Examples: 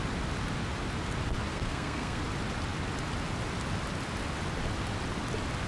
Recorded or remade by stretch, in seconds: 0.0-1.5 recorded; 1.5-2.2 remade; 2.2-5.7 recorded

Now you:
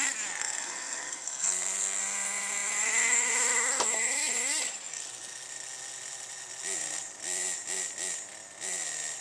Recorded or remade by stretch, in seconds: 0.0-0.4 recorded; 0.4-2.0 remade; 2.0-9.2 recorded

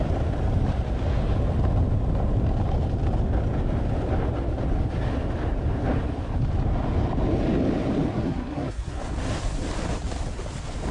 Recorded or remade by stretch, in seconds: 0.0-8.1 recorded; 8.1-9.0 remade; 9.0-10.9 recorded